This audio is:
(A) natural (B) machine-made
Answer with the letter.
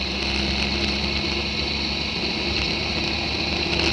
A